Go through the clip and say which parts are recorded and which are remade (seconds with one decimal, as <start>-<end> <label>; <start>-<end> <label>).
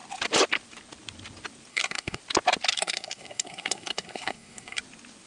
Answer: 0.0-1.7 recorded; 1.7-2.2 remade; 2.2-2.7 recorded; 2.7-4.8 remade; 4.8-5.3 recorded